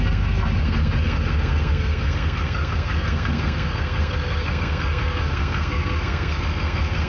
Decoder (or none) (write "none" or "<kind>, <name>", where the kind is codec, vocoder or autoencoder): codec, SNAC